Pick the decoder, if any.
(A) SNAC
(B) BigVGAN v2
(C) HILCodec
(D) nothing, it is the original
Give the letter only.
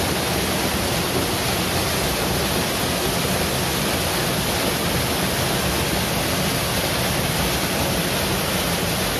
D